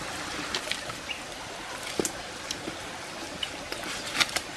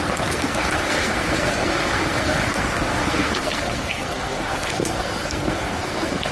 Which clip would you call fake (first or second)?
second